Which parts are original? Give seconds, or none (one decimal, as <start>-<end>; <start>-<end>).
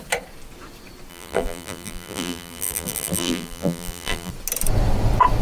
0.0-1.1; 4.3-5.4